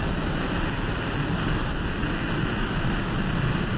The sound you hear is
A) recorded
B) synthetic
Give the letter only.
B